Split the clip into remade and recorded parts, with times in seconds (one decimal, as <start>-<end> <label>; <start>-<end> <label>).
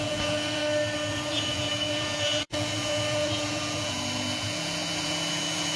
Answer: 0.0-0.6 remade; 0.6-1.1 recorded; 1.1-5.8 remade